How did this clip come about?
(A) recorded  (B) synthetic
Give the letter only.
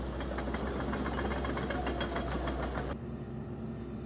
A